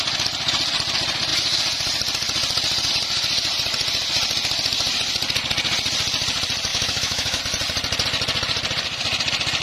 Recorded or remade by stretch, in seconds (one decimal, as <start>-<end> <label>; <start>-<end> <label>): 0.0-6.7 recorded; 6.7-7.4 remade; 7.4-9.6 recorded